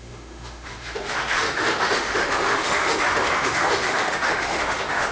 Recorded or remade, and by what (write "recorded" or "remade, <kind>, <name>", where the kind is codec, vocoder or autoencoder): remade, autoencoder, DAC-VAE